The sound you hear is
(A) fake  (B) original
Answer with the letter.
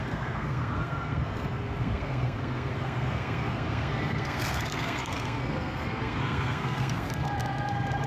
A